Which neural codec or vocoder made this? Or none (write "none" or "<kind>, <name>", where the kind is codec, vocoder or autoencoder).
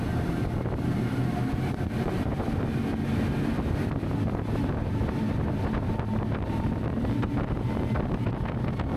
none